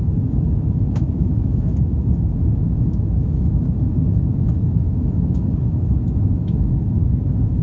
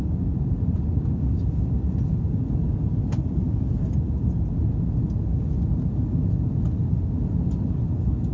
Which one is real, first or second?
second